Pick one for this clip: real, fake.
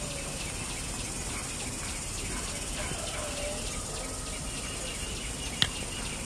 real